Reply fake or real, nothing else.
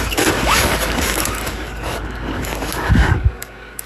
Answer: fake